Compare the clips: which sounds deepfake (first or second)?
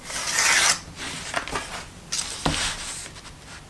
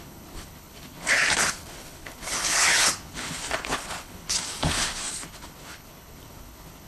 second